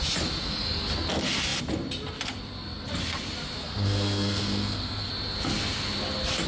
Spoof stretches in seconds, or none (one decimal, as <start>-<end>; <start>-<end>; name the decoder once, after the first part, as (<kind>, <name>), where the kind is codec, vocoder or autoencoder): 3.6-5.1 (codec, SNAC)

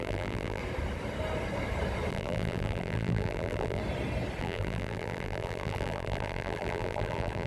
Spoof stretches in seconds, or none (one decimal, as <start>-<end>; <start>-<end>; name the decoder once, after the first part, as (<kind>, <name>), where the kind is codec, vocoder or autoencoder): 0.0-0.6 (vocoder, BigVGAN v2); 2.1-3.8; 4.4-7.5

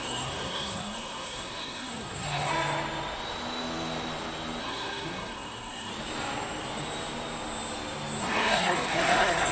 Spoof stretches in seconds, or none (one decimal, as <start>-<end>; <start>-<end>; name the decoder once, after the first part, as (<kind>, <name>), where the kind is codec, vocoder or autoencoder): 0.0-2.5 (codec, SNAC); 4.6-5.9; 8.2-9.5

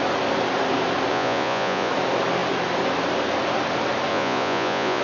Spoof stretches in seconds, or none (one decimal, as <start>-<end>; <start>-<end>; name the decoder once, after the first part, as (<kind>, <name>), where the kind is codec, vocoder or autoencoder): 1.1-1.9 (vocoder, Vocos); 4.1-5.0

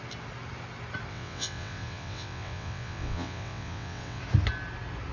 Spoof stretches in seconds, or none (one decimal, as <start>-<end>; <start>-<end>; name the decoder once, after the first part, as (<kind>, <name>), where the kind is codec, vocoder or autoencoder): 1.1-4.2 (vocoder, WaveNeXt)

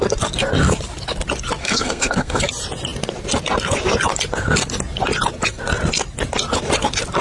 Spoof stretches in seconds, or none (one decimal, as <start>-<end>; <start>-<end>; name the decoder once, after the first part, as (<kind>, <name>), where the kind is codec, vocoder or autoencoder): 1.6-2.4 (codec, SNAC)

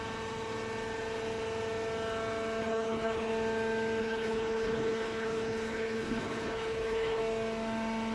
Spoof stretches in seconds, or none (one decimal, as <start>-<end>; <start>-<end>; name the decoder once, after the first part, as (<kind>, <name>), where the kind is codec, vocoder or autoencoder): 2.6-3.3 (codec, HILCodec); 4.0-7.2

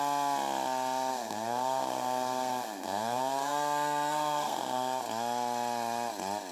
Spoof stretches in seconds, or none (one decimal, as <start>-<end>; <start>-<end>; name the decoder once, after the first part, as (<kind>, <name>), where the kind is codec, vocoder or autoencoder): 1.1-5.0 (codec, SNAC)